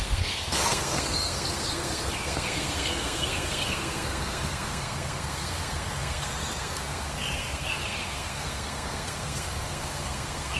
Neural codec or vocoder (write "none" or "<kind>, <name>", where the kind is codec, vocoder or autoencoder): codec, SNAC